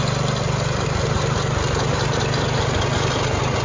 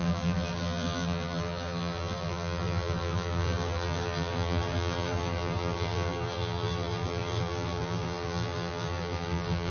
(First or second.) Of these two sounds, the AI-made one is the second